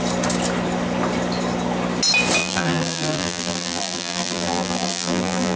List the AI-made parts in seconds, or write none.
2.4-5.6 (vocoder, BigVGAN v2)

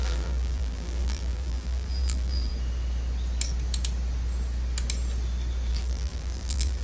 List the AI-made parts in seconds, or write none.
0.0-2.5 (vocoder, BigVGAN v2); 5.7-6.8

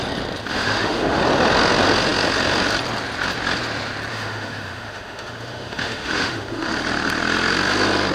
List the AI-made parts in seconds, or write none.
0.5-1.2 (autoencoder, DAC-VAE); 4.1-6.7

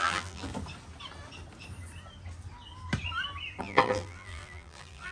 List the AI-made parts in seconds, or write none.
0.0-0.5 (vocoder, BigVGAN v2); 3.6-5.1